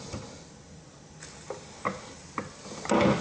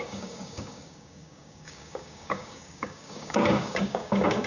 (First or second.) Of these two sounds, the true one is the first